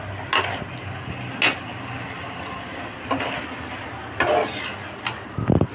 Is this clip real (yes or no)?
yes